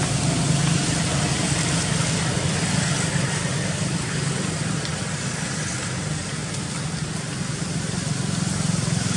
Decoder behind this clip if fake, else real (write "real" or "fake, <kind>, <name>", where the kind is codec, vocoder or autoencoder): real